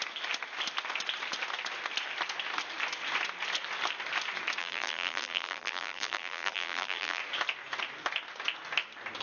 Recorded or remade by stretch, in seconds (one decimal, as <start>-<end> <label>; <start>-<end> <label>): 0.0-4.6 recorded; 4.6-7.2 remade; 7.2-9.2 recorded